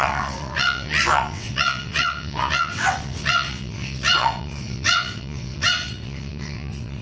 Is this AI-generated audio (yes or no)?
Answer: yes